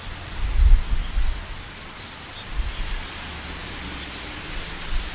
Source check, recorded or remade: recorded